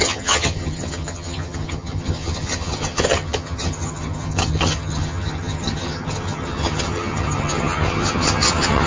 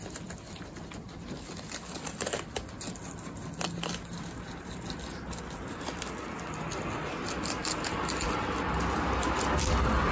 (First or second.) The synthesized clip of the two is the first